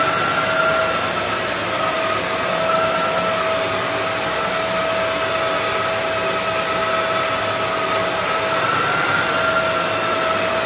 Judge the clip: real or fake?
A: real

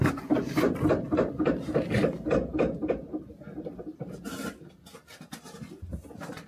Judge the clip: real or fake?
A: real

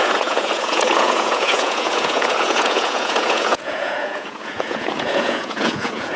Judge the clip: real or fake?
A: fake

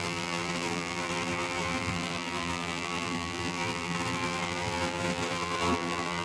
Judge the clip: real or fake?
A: fake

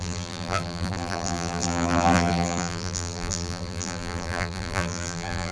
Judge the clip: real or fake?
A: fake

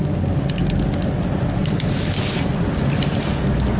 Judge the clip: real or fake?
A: real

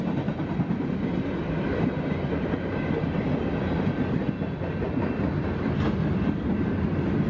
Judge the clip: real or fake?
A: real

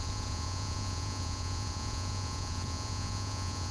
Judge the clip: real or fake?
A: fake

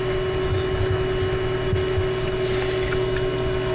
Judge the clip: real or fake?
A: real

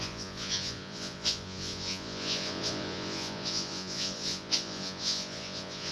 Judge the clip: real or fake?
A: fake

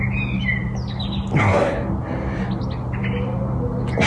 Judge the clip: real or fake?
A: real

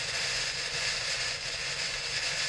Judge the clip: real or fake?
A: fake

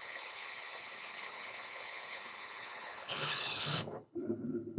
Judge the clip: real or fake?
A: fake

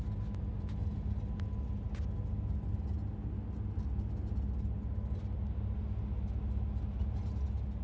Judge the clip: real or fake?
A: real